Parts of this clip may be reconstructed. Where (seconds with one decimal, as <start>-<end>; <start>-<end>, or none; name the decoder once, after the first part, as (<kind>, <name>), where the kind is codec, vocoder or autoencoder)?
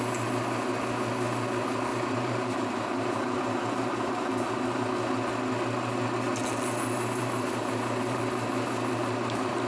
1.9-4.6 (vocoder, BigVGAN v2); 7.2-8.2; 9.0-9.7